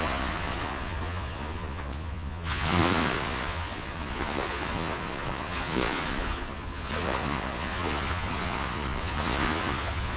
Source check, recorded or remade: remade